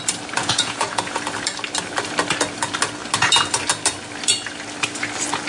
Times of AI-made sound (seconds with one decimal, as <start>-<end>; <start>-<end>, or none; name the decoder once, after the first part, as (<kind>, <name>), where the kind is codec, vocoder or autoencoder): 0.4-1.2 (vocoder, Vocos)